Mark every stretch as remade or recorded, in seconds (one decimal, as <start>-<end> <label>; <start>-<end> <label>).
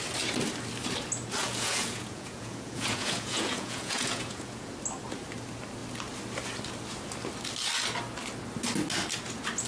0.0-1.4 recorded; 1.4-4.7 remade; 4.7-9.7 recorded